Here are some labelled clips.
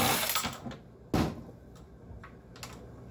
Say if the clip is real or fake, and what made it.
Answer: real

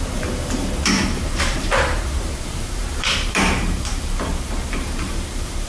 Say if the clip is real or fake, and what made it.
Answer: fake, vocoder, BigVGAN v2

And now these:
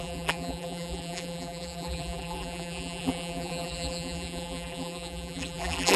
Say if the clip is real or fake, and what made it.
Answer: fake, vocoder, BigVGAN v2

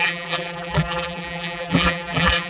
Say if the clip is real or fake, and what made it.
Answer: fake, vocoder, BigVGAN v2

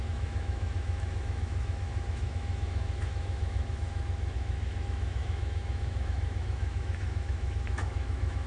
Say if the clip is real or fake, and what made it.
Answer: fake, autoencoder, DAC-VAE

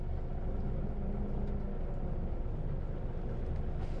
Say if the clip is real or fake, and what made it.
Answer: real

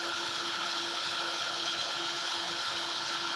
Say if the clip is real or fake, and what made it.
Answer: fake, codec, HILCodec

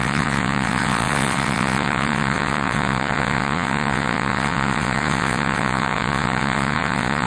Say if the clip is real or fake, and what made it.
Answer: fake, vocoder, WaveNeXt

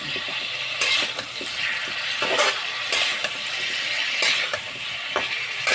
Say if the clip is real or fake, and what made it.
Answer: real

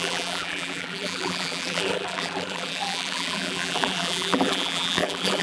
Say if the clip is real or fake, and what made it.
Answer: fake, vocoder, BigVGAN v2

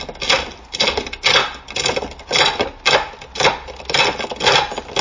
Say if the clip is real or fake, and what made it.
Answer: real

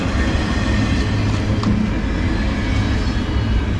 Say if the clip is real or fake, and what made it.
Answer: real